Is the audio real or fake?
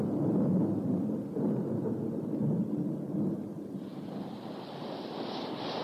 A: real